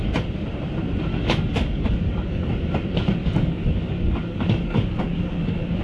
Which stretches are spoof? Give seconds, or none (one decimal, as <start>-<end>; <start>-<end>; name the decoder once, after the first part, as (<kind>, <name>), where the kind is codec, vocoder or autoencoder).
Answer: 1.1-2.5 (codec, DAC); 3.2-5.8